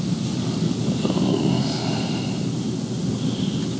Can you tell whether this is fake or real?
real